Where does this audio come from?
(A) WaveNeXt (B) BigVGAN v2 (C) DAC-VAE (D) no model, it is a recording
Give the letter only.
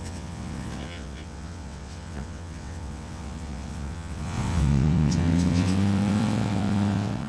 A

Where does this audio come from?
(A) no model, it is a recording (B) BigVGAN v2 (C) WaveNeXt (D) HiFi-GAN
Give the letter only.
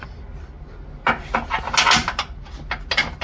A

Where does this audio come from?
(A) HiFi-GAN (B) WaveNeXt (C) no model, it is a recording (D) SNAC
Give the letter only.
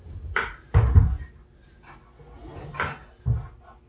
C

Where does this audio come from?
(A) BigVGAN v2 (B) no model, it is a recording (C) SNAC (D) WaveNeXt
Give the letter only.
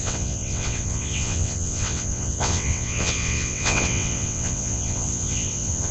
D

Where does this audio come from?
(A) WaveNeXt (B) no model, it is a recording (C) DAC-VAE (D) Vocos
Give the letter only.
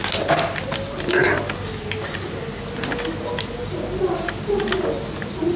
B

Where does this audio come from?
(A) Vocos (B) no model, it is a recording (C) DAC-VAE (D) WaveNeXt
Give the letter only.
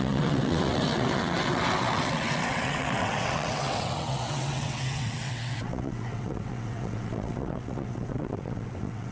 D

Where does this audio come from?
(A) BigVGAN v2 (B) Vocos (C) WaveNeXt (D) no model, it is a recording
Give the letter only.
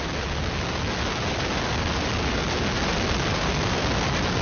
D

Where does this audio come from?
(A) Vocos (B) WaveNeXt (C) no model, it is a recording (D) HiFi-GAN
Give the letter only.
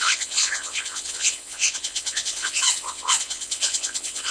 B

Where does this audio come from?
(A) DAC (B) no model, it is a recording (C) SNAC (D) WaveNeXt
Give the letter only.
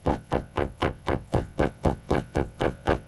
D